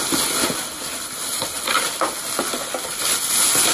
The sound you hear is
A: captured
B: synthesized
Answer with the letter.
A